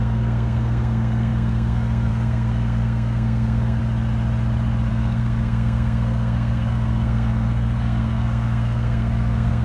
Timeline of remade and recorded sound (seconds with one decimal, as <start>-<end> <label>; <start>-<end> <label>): 0.0-3.8 remade; 3.8-4.9 recorded; 4.9-9.6 remade